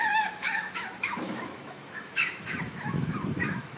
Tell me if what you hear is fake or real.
fake